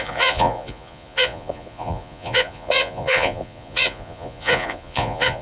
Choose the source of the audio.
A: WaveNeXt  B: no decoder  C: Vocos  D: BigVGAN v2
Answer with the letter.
C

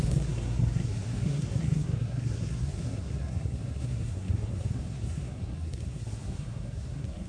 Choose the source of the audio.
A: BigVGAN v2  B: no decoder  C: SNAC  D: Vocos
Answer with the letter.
C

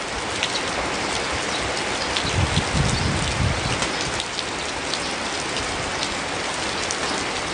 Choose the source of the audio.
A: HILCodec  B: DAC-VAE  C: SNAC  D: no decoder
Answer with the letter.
D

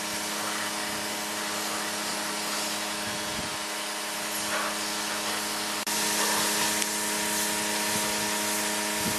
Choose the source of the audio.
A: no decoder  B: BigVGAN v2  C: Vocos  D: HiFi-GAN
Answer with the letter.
A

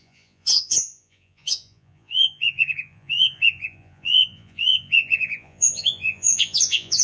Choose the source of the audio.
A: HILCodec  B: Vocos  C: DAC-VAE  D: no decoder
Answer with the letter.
B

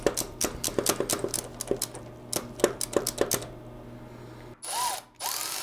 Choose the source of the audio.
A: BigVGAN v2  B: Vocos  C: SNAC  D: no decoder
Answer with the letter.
D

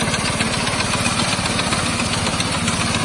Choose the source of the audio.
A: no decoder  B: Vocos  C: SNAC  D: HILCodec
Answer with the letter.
A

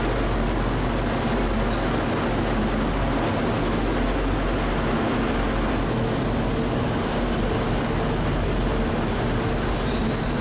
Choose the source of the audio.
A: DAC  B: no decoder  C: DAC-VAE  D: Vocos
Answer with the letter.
B